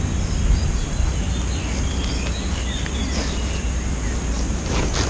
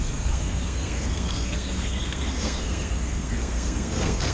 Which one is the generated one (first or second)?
second